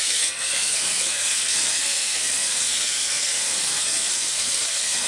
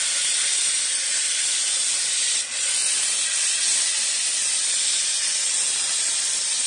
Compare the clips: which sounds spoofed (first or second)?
first